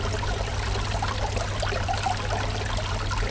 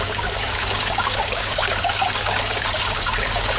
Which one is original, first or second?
first